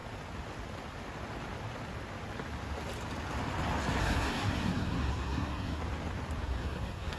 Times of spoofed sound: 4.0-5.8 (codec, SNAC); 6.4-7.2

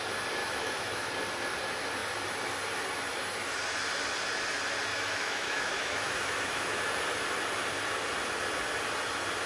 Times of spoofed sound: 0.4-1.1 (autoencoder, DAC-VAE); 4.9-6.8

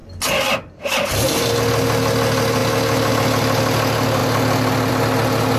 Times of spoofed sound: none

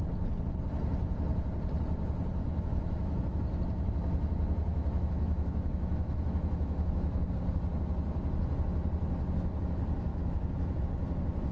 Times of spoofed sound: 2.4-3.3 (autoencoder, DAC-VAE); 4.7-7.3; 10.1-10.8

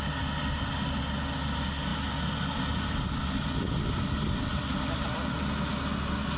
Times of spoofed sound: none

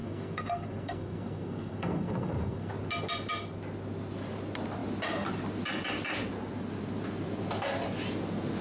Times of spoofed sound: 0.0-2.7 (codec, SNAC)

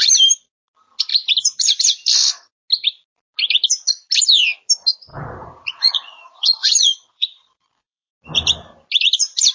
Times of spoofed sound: 5.1-8.1 (vocoder, Vocos)